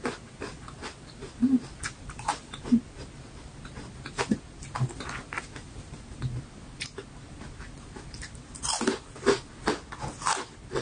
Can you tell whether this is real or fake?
real